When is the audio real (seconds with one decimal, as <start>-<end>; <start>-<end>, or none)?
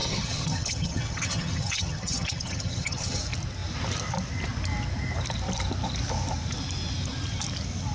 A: 3.2-7.9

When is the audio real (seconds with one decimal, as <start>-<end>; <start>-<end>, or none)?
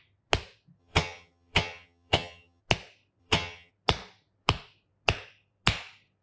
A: 0.0-0.8; 2.6-3.2; 3.7-6.2